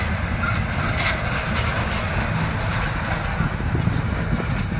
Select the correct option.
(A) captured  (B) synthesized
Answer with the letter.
A